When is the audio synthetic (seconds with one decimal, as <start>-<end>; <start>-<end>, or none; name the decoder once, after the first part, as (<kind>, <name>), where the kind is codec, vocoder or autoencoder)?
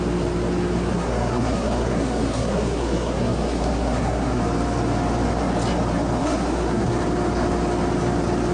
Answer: 0.9-4.4 (codec, SNAC); 6.2-6.9